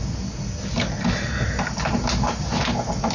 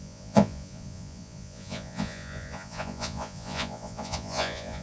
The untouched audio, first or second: first